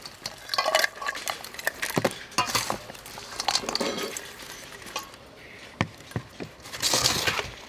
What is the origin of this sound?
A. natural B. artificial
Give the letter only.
A